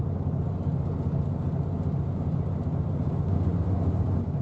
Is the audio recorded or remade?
recorded